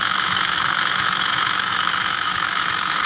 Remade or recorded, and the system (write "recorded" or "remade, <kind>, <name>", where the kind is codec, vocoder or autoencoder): remade, autoencoder, DAC-VAE